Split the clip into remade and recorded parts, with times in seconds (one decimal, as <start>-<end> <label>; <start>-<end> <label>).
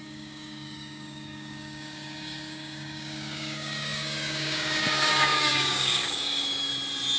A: 0.0-6.7 remade; 6.7-7.2 recorded